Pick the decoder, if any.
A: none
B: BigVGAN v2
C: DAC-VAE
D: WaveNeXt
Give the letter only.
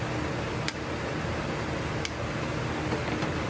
A